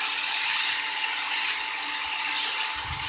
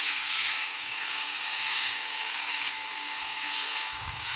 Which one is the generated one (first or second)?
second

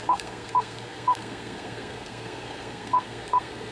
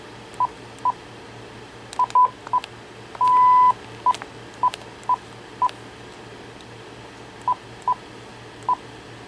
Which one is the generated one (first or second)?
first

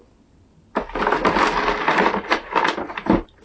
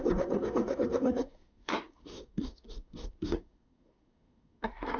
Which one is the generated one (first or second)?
second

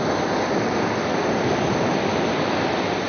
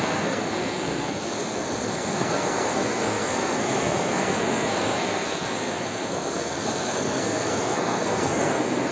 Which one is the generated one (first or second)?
second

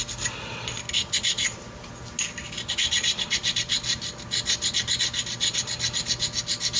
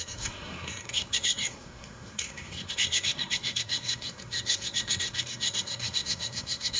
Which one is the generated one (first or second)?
second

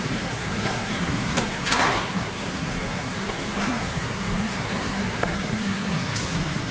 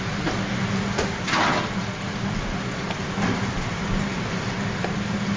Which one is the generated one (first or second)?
first